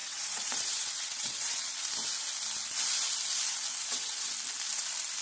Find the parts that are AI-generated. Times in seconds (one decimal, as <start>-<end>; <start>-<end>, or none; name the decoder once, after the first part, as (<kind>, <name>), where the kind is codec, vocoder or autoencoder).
0.0-1.8 (vocoder, WaveNeXt); 3.7-4.3